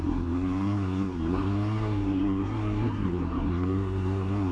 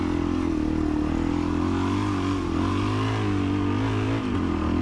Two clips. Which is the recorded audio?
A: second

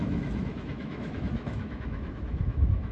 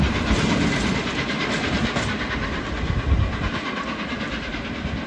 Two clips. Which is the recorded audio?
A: second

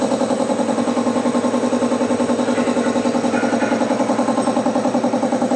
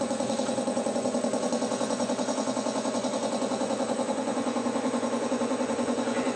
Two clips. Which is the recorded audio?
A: first